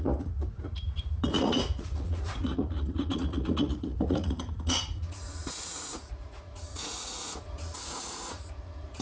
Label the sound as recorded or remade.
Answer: remade